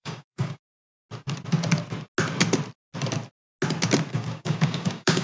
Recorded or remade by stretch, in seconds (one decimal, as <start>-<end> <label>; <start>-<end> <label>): 0.0-1.0 remade; 1.0-4.1 recorded; 4.1-5.2 remade